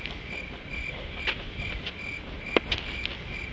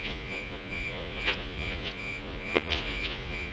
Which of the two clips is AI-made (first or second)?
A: second